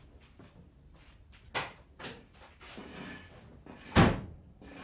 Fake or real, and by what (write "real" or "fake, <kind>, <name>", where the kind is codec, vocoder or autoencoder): real